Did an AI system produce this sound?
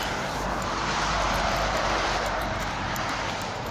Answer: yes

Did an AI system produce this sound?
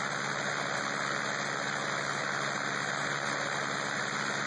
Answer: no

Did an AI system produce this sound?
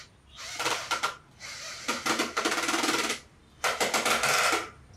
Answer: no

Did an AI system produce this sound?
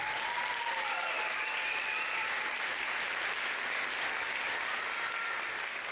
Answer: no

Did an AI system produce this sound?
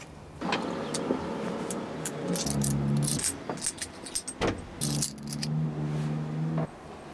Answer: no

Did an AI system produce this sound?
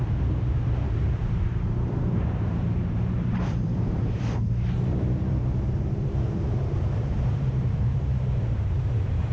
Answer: yes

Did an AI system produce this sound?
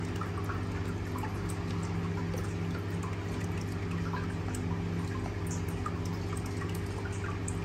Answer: no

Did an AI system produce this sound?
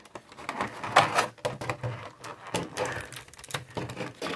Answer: no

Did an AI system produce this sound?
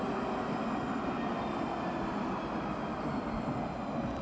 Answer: no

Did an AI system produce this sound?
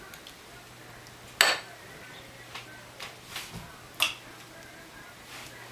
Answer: no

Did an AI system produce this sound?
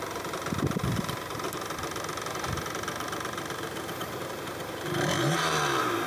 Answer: yes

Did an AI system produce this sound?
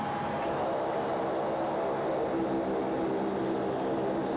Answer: no